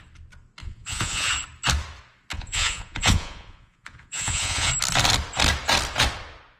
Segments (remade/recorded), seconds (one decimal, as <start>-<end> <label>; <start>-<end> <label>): 0.0-0.6 recorded; 0.6-1.3 remade; 1.3-2.3 recorded; 2.3-4.7 remade; 4.7-6.6 recorded